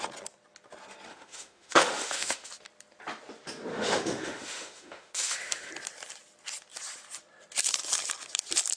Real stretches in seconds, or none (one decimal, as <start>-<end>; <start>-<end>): 0.0-1.1; 2.5-3.7; 5.7-8.8